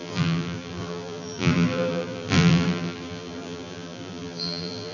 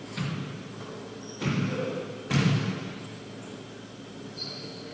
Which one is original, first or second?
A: second